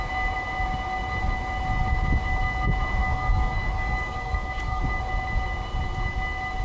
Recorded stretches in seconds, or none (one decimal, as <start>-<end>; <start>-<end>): 0.0-3.0; 4.8-6.6

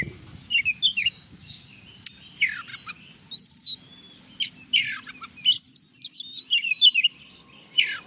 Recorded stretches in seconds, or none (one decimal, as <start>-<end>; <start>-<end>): 0.0-0.9; 1.8-8.1